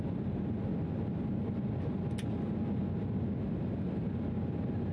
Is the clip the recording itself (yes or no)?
yes